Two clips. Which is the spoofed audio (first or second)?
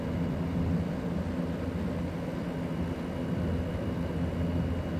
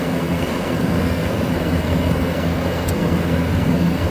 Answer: second